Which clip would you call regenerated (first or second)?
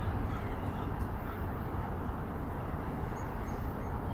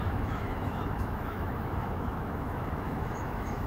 second